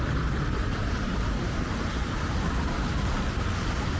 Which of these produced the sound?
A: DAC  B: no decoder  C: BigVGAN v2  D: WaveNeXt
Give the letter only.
C